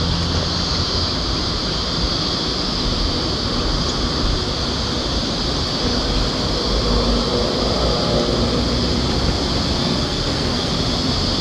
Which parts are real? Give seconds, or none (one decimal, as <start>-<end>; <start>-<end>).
0.0-9.8; 10.7-11.4